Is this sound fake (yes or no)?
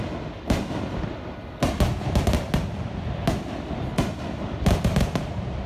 no